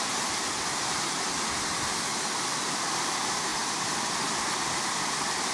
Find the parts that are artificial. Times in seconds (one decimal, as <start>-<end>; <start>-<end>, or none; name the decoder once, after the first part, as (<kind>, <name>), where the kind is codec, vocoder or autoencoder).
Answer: none